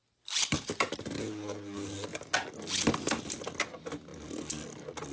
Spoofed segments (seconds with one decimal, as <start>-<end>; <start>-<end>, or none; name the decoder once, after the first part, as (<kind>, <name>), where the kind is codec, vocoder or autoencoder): 0.0-2.1 (vocoder, BigVGAN v2); 3.2-5.1